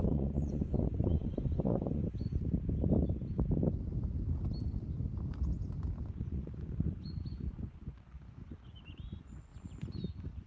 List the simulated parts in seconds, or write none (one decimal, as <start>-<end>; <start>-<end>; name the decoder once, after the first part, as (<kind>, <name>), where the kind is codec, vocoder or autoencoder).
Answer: 0.0-2.0 (vocoder, Vocos); 6.1-9.5; 10.1-10.5